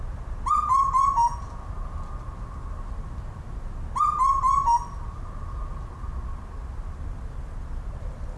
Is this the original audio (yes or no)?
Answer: yes